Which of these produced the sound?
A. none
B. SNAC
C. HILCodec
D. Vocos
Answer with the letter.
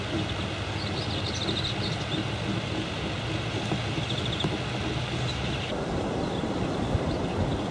A